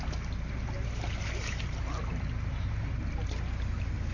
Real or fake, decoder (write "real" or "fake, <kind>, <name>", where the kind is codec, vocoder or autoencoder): real